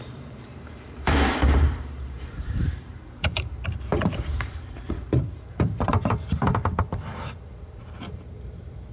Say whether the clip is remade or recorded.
remade